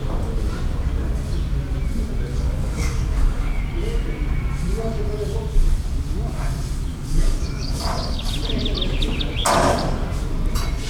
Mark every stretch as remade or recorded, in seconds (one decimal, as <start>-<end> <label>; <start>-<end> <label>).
0.0-2.3 recorded; 2.3-3.6 remade; 3.6-6.9 recorded; 6.9-8.2 remade; 8.2-10.9 recorded